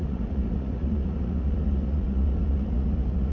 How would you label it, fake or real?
fake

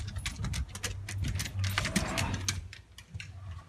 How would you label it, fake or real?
real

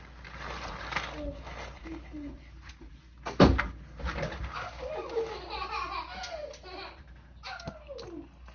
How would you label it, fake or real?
real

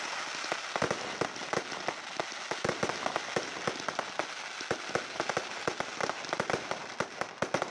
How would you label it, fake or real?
real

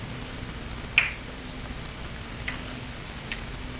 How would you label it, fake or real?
real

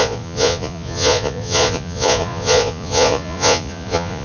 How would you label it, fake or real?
fake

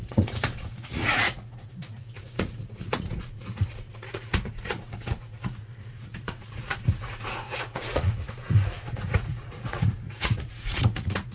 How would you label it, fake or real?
fake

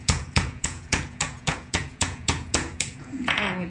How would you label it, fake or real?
fake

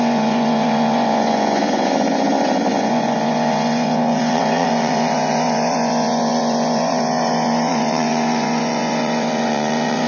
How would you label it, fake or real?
fake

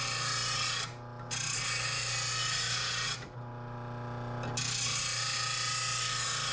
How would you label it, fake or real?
real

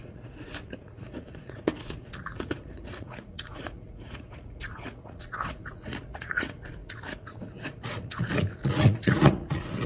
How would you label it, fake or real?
fake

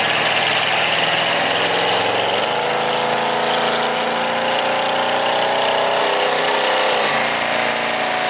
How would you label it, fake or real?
real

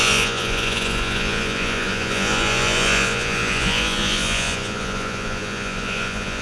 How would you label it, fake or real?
fake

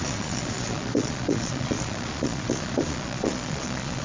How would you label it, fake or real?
fake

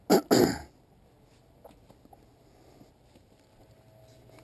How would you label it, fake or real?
real